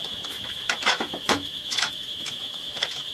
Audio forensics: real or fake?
fake